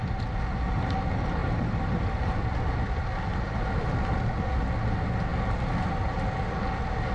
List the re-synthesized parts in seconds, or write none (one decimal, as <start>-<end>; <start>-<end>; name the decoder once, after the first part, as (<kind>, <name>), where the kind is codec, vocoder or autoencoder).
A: 1.4-2.4 (vocoder, BigVGAN v2)